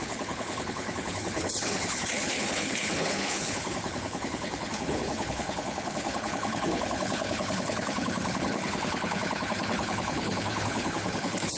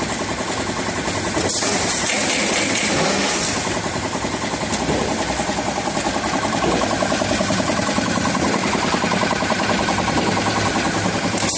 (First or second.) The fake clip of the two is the first